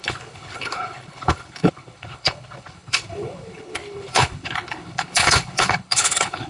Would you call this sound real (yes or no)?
no